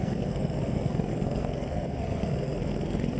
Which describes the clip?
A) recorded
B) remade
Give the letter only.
B